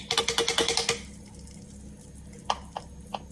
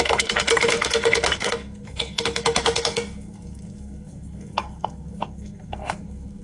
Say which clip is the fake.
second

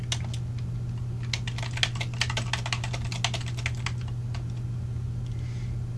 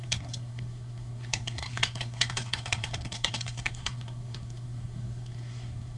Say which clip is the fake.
second